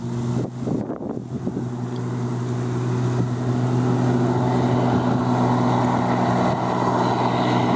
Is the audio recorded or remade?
recorded